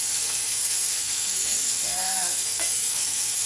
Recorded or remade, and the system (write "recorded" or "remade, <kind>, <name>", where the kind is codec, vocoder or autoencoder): remade, codec, SNAC